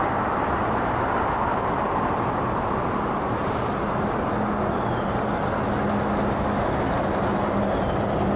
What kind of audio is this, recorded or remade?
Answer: recorded